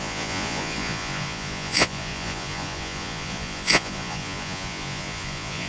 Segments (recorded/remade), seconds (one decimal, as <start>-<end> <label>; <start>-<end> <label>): 0.0-5.7 remade